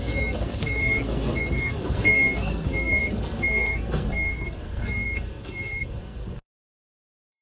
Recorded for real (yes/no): no